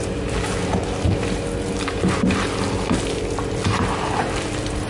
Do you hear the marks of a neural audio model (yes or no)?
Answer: no